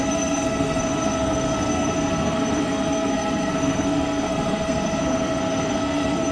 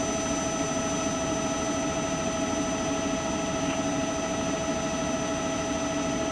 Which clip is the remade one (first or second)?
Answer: first